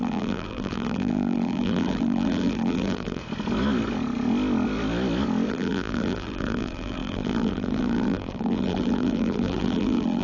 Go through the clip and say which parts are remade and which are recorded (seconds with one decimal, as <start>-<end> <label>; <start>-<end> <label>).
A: 0.0-3.2 remade; 3.2-5.5 recorded; 5.5-10.2 remade